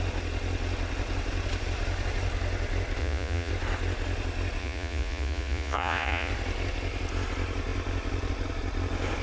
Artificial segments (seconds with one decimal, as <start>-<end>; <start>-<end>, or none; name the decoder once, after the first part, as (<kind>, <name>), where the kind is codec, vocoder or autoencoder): 3.0-3.5 (vocoder, Vocos); 4.6-6.3